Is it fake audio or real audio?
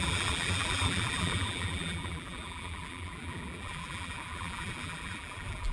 fake